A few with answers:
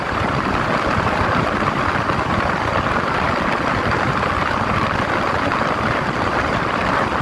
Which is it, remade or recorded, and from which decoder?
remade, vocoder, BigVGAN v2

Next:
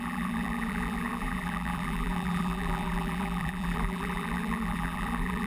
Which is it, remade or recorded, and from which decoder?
remade, vocoder, BigVGAN v2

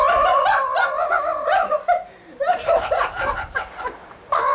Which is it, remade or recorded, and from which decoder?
remade, vocoder, BigVGAN v2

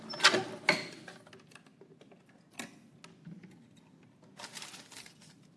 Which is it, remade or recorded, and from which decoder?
recorded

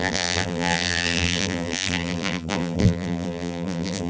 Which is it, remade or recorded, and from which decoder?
remade, vocoder, BigVGAN v2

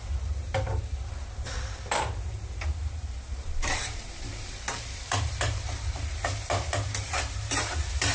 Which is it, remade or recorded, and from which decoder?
remade, vocoder, BigVGAN v2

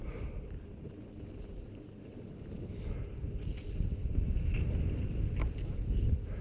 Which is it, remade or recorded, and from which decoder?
recorded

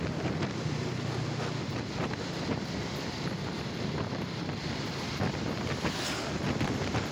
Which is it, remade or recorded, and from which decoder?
recorded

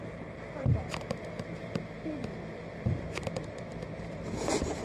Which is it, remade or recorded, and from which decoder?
remade, vocoder, BigVGAN v2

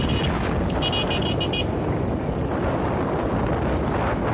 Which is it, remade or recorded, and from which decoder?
recorded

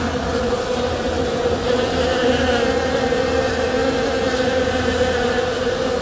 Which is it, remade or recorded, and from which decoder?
recorded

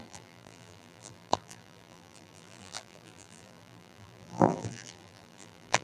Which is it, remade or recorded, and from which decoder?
remade, vocoder, BigVGAN v2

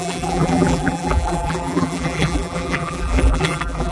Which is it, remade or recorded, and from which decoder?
remade, vocoder, BigVGAN v2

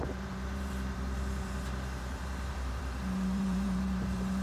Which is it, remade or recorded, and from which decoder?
remade, vocoder, BigVGAN v2